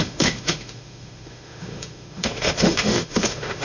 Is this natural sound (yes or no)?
no